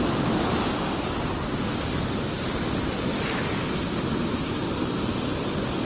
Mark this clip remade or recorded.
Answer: recorded